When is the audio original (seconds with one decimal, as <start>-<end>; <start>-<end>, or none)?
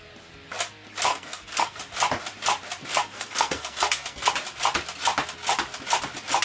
0.0-1.1; 1.8-2.9; 4.3-6.4